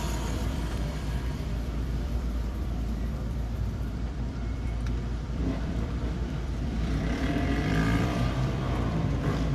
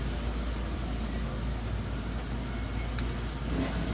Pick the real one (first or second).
second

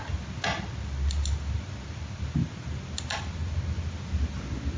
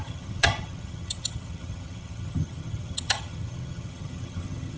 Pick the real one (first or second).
first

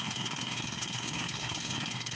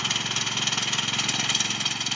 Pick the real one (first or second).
second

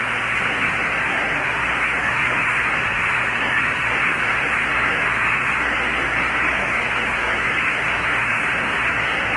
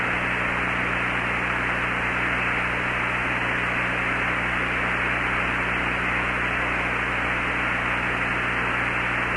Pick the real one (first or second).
second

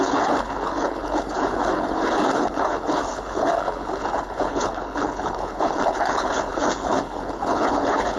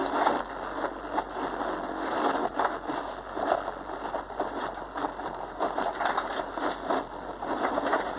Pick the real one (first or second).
second